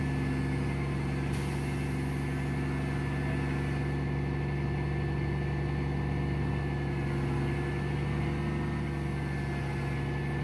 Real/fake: real